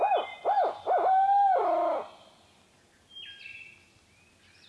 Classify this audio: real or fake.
real